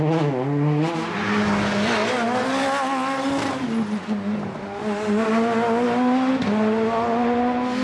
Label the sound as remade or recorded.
recorded